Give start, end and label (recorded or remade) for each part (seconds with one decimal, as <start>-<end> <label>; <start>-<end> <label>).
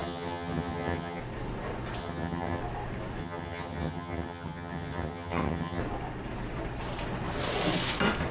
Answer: 0.0-1.2 remade; 1.2-2.0 recorded; 2.0-2.6 remade; 2.6-3.2 recorded; 3.2-5.8 remade; 5.8-8.3 recorded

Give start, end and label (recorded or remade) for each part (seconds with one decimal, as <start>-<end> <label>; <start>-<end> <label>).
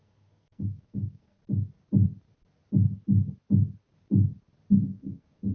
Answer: 0.0-1.4 remade; 1.4-4.7 recorded; 4.7-5.5 remade